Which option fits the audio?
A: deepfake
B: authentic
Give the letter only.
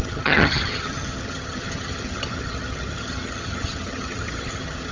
A